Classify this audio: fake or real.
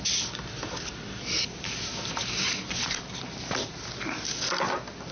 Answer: real